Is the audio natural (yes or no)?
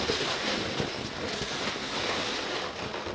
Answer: yes